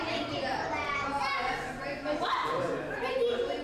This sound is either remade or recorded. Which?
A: remade